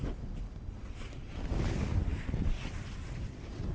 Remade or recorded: recorded